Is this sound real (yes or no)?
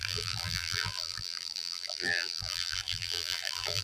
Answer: no